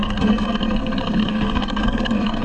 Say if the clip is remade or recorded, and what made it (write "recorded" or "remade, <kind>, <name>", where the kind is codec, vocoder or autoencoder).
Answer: remade, codec, SNAC